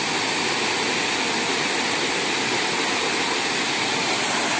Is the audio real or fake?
real